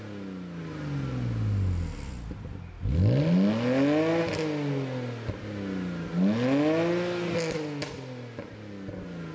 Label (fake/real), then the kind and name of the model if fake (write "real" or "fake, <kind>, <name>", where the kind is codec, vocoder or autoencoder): real